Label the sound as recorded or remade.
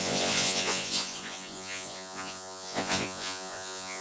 remade